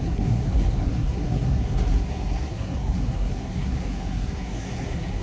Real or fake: fake